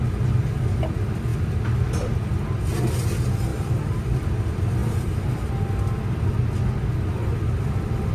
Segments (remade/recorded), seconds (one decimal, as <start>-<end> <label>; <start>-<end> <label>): 0.0-3.5 recorded; 3.5-4.0 remade; 4.0-4.8 recorded; 4.8-5.5 remade; 5.5-8.1 recorded